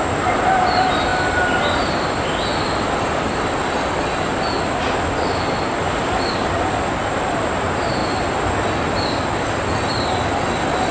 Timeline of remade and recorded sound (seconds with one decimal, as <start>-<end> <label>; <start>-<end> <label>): 0.0-10.9 recorded